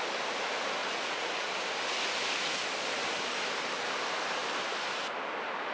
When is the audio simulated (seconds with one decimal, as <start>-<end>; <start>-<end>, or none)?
0.8-1.5